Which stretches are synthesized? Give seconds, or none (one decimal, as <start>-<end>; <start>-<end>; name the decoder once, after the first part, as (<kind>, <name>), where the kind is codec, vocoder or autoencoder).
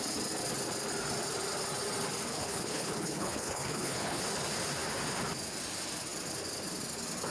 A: 2.3-4.2 (codec, HILCodec)